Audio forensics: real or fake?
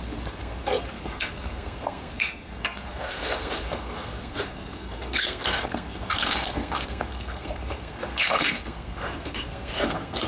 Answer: fake